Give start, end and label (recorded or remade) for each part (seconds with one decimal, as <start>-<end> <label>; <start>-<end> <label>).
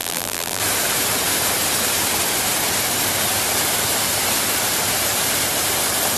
0.0-0.6 remade; 0.6-6.2 recorded